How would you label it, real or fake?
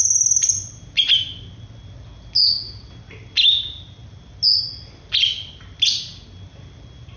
real